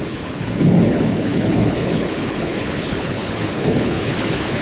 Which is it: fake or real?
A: fake